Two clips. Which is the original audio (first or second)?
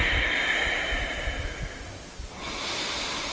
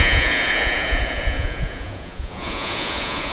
first